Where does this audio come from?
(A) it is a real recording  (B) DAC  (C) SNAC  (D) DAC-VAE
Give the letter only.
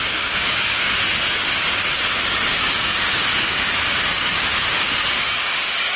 B